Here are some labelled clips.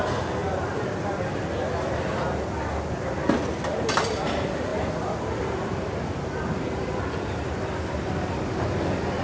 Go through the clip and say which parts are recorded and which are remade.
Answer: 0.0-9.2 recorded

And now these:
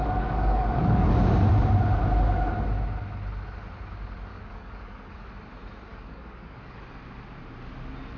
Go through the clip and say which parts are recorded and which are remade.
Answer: 0.0-1.1 remade; 1.1-4.3 recorded; 4.3-5.3 remade; 5.3-5.9 recorded; 5.9-6.8 remade; 6.8-8.2 recorded

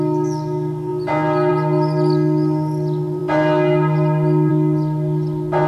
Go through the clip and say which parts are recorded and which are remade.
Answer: 0.0-5.7 recorded

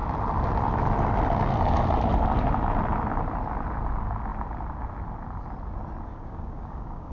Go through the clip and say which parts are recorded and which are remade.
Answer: 0.0-6.1 recorded; 6.1-7.1 remade

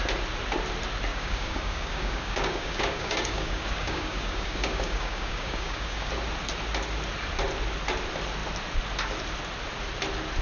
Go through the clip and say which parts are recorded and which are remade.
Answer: 0.0-1.1 recorded; 1.1-6.1 remade; 6.1-10.4 recorded

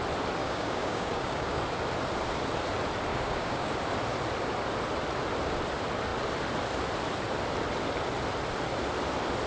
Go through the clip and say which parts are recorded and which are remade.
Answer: 0.0-0.4 recorded; 0.4-1.6 remade; 1.6-3.1 recorded; 3.1-3.7 remade; 3.7-9.5 recorded